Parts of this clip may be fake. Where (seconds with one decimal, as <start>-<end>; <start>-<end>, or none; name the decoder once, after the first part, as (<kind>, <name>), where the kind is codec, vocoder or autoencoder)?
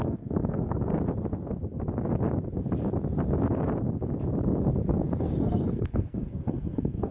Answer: 0.0-0.9 (codec, SNAC); 5.2-7.1